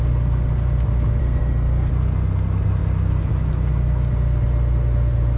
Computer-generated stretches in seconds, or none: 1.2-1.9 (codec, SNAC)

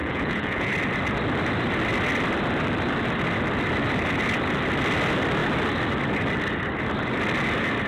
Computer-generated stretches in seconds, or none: 0.0-0.7 (vocoder, Vocos)